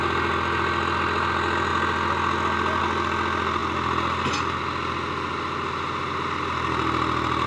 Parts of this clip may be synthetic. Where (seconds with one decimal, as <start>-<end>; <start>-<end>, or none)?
none